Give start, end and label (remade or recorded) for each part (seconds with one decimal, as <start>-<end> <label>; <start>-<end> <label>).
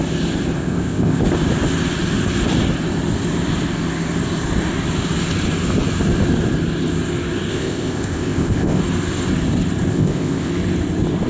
0.0-0.6 recorded; 0.6-1.2 remade; 1.2-7.5 recorded; 7.5-8.8 remade; 8.8-9.9 recorded; 9.9-10.5 remade; 10.5-11.3 recorded